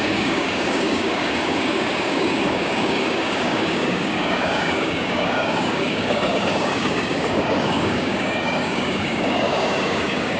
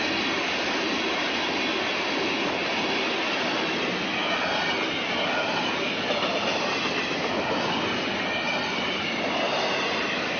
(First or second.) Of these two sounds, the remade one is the first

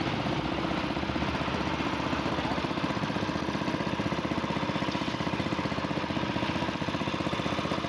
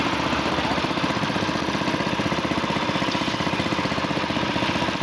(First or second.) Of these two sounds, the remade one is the second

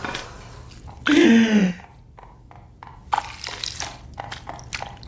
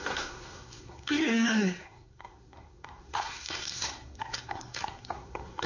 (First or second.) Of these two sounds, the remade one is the second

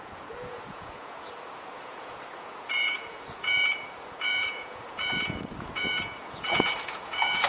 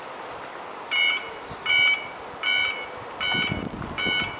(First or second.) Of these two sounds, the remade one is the first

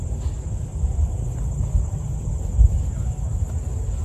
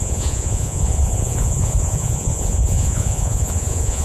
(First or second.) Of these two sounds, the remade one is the second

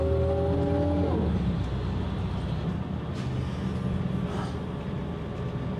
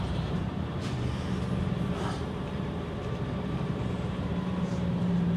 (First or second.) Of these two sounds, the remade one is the second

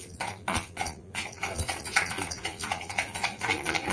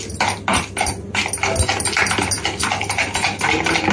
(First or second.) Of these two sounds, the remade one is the first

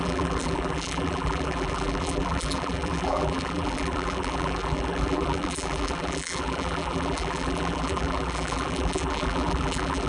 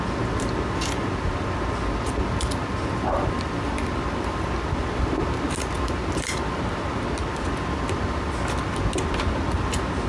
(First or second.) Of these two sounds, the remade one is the first